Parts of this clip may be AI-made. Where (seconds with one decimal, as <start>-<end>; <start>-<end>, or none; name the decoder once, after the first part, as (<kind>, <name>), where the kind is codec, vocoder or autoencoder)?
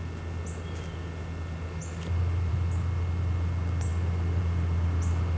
none